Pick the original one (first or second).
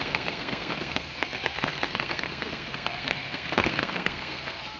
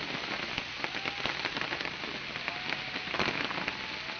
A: second